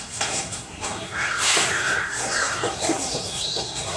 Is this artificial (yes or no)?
yes